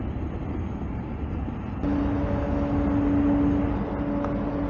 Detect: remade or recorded recorded